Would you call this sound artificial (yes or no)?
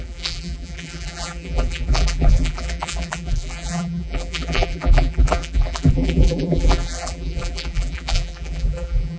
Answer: yes